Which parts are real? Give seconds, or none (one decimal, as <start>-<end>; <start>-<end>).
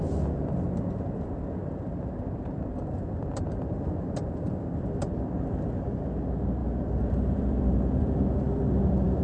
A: 0.0-1.6; 6.0-6.6